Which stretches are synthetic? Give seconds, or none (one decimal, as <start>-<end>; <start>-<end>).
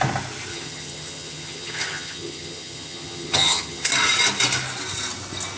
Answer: 0.5-3.9